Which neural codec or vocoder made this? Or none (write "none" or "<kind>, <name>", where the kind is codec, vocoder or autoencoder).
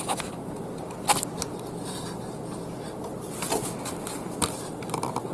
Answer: none